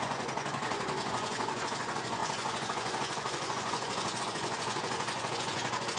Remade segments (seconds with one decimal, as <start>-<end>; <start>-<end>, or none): 0.0-6.0